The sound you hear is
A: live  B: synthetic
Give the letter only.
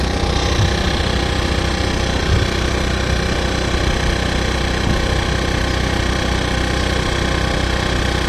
A